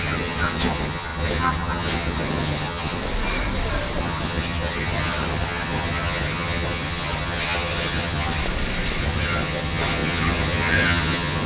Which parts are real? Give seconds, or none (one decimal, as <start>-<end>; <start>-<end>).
3.0-4.0; 8.4-9.0